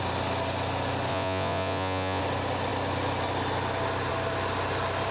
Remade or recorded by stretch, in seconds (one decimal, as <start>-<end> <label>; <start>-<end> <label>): 0.0-1.1 recorded; 1.1-2.2 remade; 2.2-5.1 recorded